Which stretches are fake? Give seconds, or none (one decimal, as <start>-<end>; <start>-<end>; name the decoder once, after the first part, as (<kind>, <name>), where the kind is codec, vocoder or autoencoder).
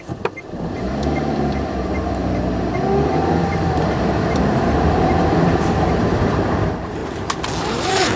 0.0-2.2 (vocoder, BigVGAN v2); 3.1-7.0